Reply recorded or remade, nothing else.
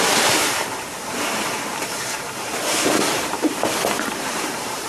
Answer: remade